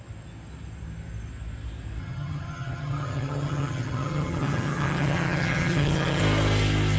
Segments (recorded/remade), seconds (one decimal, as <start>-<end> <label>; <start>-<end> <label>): 0.0-2.0 recorded; 2.0-6.2 remade; 6.2-7.0 recorded